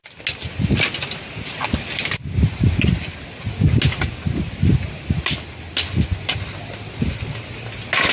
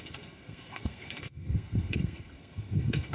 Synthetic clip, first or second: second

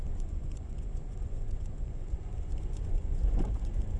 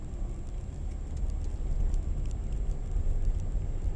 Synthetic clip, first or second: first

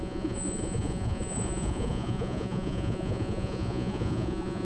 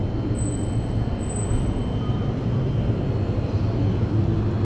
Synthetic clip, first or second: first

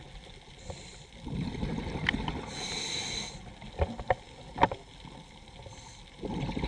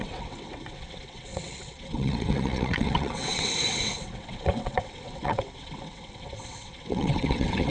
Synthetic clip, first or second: second